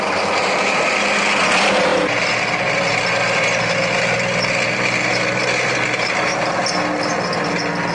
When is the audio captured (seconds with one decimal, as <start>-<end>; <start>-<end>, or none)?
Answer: 0.0-7.9